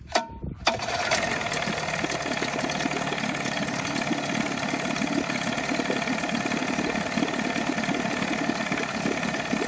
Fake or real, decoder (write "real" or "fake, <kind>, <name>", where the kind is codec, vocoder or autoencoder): real